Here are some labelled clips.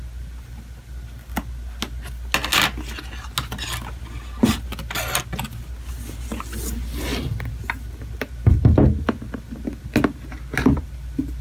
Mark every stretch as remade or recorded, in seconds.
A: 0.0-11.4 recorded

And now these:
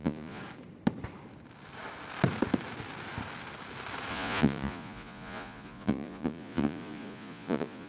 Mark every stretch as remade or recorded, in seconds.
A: 0.0-0.4 remade; 0.4-4.1 recorded; 4.1-7.9 remade

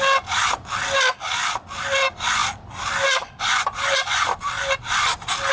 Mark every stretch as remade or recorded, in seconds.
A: 0.0-5.5 recorded

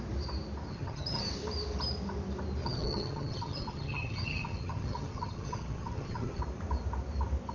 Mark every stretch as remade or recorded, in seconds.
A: 0.0-0.7 recorded; 0.7-1.3 remade; 1.3-2.6 recorded; 2.6-6.4 remade; 6.4-7.5 recorded